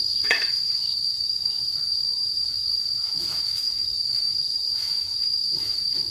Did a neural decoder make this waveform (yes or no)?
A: yes